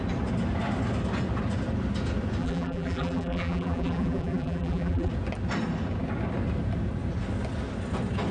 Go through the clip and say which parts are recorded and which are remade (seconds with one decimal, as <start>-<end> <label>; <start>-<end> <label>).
0.0-2.4 recorded; 2.4-5.1 remade; 5.1-8.3 recorded